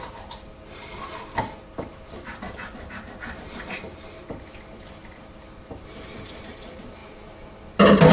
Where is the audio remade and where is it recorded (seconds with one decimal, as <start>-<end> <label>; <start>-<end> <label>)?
0.0-8.1 recorded